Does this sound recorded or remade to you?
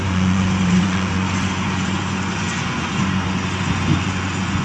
remade